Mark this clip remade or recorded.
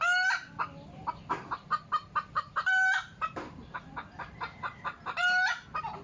recorded